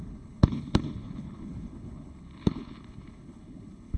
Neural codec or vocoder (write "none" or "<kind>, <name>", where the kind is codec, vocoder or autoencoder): codec, HILCodec